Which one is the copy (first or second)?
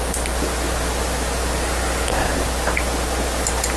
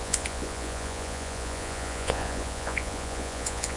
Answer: second